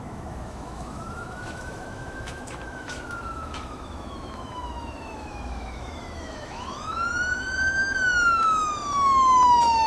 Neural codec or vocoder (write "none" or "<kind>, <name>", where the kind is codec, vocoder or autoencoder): autoencoder, DAC-VAE